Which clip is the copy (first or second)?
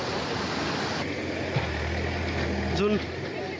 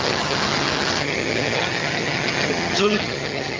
second